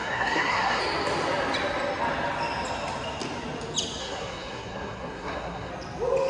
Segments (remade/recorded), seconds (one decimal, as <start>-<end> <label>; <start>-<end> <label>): 0.0-0.8 remade; 0.8-4.0 recorded; 4.0-5.7 remade; 5.7-6.3 recorded